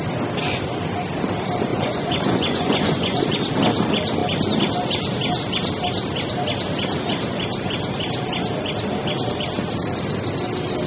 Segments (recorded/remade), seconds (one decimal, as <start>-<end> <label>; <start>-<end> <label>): 0.0-1.7 recorded; 1.7-3.2 remade; 3.2-10.9 recorded